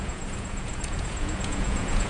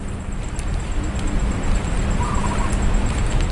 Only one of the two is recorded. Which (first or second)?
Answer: second